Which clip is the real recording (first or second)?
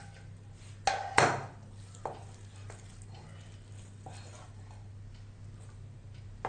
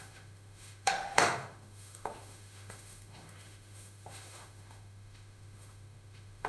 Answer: first